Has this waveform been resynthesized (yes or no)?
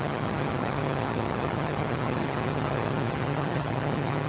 yes